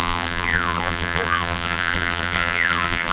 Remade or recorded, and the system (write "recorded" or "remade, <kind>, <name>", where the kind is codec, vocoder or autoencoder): remade, vocoder, BigVGAN v2